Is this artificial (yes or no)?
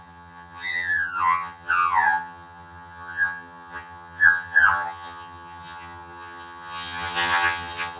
yes